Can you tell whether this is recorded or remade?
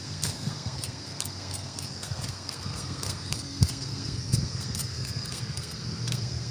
remade